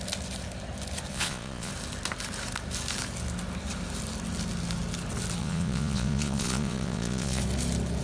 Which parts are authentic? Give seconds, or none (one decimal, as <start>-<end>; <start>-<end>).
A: 0.0-1.1; 1.7-5.4; 7.4-8.0